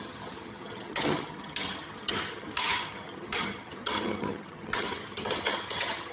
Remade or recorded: remade